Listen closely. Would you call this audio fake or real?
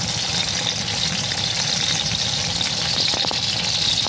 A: real